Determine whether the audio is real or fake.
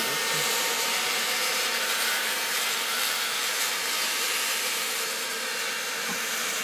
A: fake